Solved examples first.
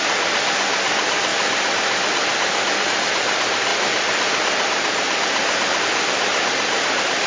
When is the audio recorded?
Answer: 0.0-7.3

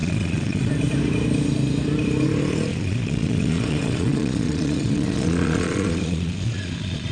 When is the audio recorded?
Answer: 0.7-2.7